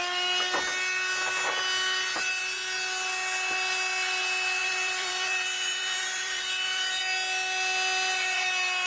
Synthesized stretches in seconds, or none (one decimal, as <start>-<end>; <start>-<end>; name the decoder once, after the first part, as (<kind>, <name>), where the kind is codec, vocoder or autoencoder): 4.6-7.0 (vocoder, BigVGAN v2)